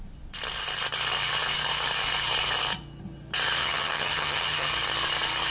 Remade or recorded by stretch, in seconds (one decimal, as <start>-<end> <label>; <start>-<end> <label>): 0.0-3.6 recorded; 3.6-4.7 remade; 4.7-5.5 recorded